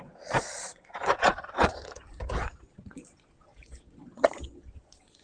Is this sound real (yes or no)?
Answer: no